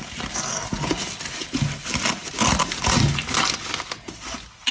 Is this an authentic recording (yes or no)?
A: yes